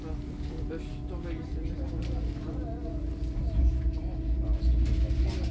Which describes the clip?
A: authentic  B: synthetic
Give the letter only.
A